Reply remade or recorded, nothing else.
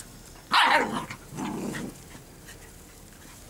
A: recorded